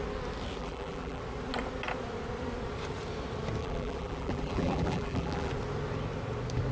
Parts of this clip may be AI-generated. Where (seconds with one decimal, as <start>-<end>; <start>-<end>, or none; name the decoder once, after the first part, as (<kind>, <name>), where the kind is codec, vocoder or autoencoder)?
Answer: 0.6-1.2 (vocoder, BigVGAN v2); 3.6-5.5